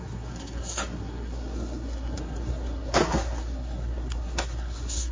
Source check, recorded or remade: remade